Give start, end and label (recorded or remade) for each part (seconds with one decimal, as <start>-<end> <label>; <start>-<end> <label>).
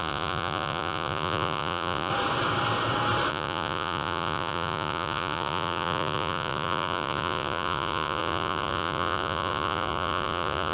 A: 0.0-2.1 remade; 2.1-3.3 recorded; 3.3-10.7 remade